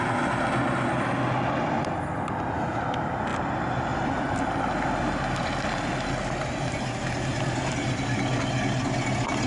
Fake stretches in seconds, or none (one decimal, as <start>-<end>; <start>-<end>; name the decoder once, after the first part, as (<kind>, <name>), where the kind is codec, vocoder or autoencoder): none